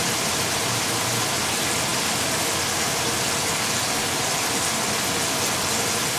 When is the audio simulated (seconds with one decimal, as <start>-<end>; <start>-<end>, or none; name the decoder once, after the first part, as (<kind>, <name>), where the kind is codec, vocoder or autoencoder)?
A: 0.0-1.1 (vocoder, BigVGAN v2)